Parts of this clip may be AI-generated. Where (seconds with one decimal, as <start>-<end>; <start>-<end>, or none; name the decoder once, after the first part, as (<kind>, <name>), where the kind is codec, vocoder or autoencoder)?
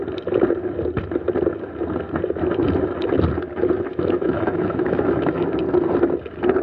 3.9-5.6 (autoencoder, DAC-VAE)